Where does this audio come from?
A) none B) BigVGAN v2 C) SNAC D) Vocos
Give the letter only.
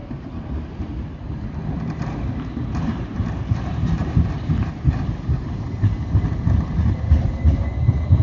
B